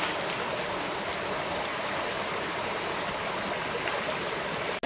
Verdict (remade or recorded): recorded